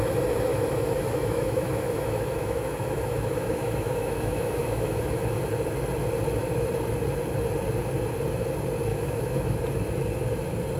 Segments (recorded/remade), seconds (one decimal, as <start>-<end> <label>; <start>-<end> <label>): 0.0-0.5 recorded; 0.5-5.4 remade; 5.4-8.9 recorded; 8.9-9.6 remade; 9.6-10.8 recorded